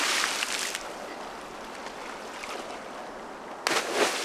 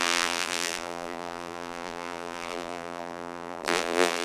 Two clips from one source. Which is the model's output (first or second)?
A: second